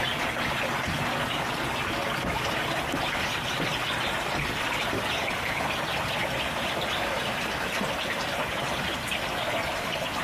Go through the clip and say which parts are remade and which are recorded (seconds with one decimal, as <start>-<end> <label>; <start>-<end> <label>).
0.0-10.2 recorded